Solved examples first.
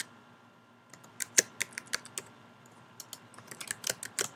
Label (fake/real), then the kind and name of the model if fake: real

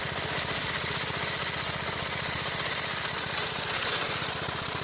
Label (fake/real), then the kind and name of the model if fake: real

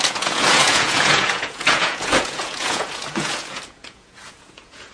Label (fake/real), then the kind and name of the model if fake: fake, vocoder, Vocos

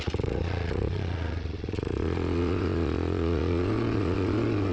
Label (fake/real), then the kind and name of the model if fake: fake, vocoder, Vocos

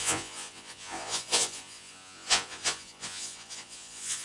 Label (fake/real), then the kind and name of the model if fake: fake, vocoder, Vocos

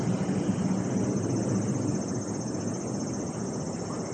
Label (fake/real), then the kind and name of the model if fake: real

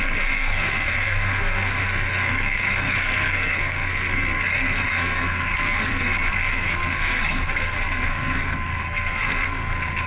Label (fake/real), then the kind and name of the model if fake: fake, codec, SNAC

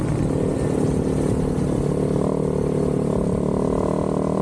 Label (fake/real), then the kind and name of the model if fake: real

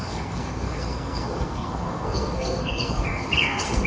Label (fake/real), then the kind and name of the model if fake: fake, codec, SNAC